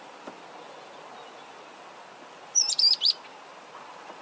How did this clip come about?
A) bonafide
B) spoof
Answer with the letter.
A